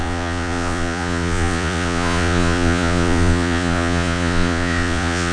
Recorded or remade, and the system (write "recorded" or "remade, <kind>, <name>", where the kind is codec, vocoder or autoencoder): remade, vocoder, Vocos